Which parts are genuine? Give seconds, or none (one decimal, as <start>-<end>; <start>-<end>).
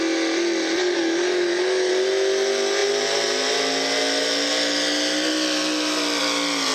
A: 0.0-0.8; 1.9-6.7